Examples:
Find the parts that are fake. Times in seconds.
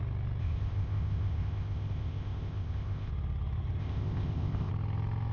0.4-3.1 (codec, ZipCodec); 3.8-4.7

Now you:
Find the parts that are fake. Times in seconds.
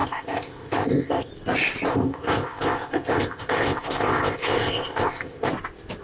0.0-1.3 (codec, ZipCodec); 1.9-5.5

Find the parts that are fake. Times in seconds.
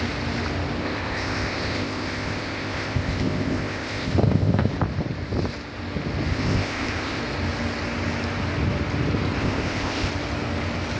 0.8-4.7 (codec, ZipCodec); 6.3-7.2; 9.4-10.1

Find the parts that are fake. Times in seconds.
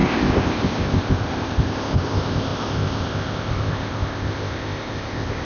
0.0-5.4 (codec, ZipCodec)